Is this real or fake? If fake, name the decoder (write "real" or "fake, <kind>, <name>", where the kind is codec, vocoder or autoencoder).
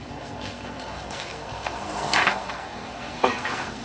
fake, codec, SNAC